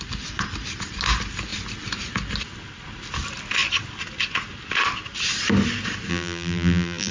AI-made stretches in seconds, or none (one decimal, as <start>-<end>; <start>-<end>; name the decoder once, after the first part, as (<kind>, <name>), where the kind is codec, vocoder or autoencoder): 6.1-7.1 (vocoder, BigVGAN v2)